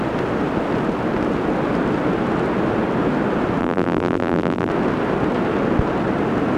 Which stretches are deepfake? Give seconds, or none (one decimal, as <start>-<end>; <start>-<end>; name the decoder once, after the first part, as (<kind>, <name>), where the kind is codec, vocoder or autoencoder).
3.6-4.7 (vocoder, BigVGAN v2)